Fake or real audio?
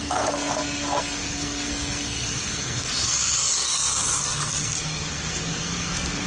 fake